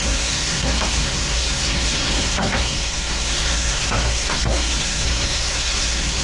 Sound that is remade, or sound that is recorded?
remade